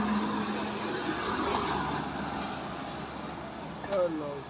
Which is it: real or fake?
real